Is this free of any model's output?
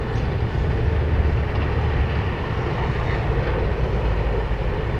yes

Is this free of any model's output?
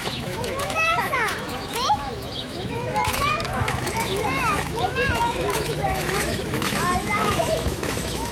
no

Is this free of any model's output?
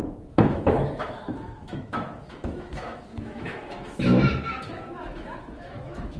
no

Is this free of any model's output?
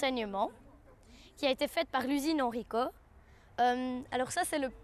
yes